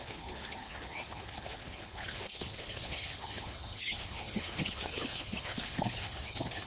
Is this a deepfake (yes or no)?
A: yes